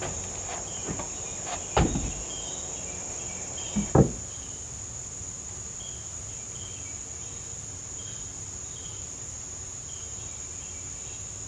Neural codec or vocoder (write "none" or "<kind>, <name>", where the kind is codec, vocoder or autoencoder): none